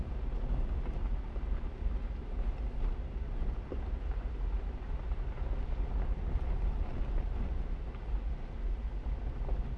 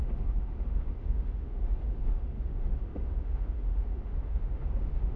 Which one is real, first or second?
first